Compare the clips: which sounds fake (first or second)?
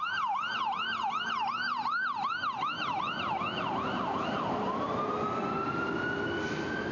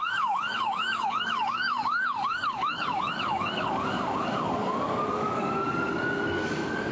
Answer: second